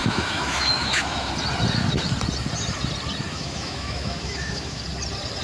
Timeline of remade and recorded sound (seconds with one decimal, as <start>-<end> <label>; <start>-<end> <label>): 0.0-1.3 remade; 1.3-3.3 recorded; 3.3-4.8 remade; 4.8-5.4 recorded